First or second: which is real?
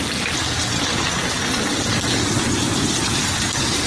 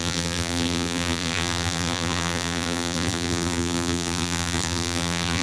first